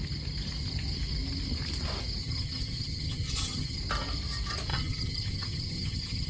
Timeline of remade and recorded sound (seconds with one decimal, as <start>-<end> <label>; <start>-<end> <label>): 0.0-2.2 recorded; 2.2-3.8 remade; 3.8-4.7 recorded; 4.7-6.3 remade